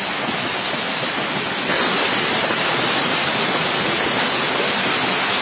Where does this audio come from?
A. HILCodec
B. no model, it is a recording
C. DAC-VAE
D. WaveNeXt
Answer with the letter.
B